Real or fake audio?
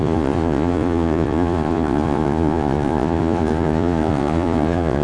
fake